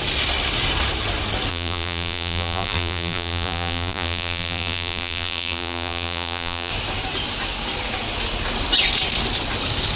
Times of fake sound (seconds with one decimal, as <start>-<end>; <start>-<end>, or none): 1.5-6.7